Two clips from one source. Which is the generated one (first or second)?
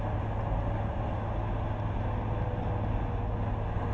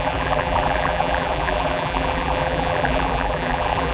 second